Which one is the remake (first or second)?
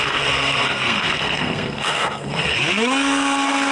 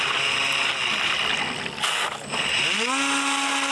first